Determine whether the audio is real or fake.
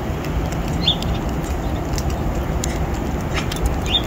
real